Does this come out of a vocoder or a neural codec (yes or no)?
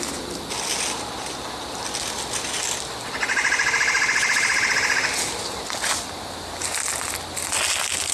no